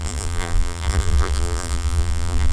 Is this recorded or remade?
remade